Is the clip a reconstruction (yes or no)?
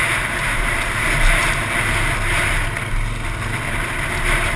no